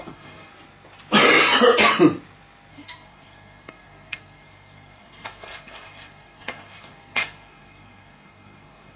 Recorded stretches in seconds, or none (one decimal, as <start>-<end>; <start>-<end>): 0.5-2.7